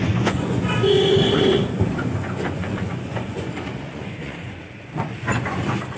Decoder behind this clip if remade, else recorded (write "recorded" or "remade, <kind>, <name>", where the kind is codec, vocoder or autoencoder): remade, vocoder, Vocos